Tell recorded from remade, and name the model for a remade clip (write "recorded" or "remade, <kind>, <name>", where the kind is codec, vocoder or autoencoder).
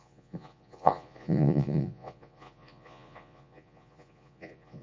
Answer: remade, vocoder, Vocos